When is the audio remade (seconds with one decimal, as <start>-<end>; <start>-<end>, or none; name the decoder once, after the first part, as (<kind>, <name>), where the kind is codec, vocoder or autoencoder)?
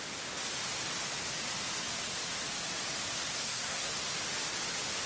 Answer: 3.4-3.9 (codec, SNAC)